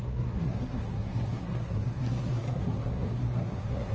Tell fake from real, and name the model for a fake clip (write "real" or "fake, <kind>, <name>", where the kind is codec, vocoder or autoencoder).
fake, codec, SNAC